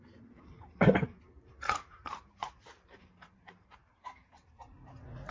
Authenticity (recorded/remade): remade